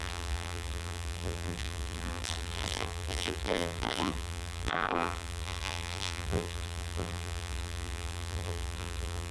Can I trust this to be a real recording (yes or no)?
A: no